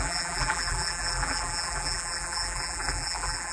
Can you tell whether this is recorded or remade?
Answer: remade